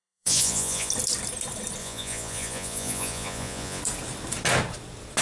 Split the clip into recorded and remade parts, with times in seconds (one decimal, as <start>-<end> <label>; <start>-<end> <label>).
0.0-0.9 remade; 0.9-1.8 recorded; 1.8-3.8 remade; 3.8-5.2 recorded